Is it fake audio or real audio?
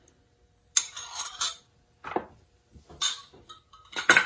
real